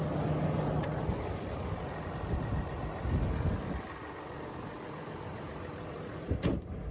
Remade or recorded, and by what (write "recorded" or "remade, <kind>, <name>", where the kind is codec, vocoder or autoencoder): recorded